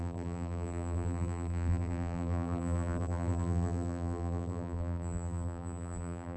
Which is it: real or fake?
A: fake